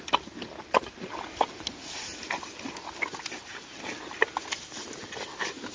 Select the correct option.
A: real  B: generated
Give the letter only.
A